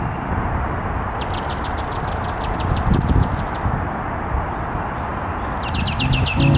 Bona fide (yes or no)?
yes